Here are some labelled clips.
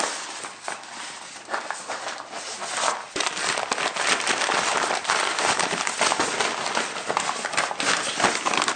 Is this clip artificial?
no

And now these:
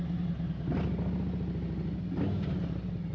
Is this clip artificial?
no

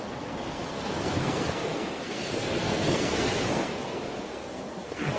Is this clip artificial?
yes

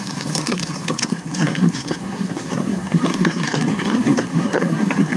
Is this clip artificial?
yes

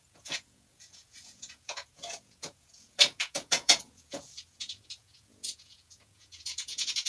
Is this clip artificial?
yes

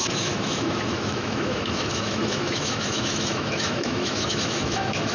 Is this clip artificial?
yes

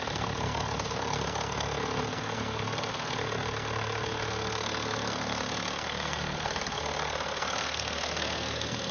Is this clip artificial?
yes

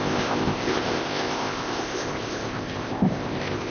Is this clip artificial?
yes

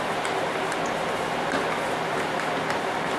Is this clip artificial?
no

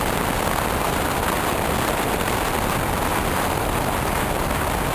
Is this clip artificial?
no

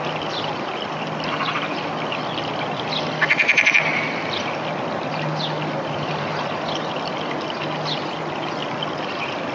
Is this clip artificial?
no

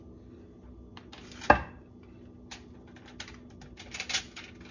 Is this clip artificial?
no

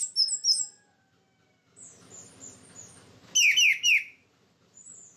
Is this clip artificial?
no